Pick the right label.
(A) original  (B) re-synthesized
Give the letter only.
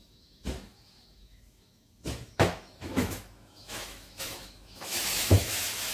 B